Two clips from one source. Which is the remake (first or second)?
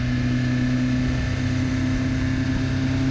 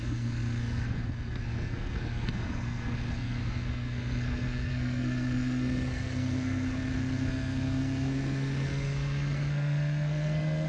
second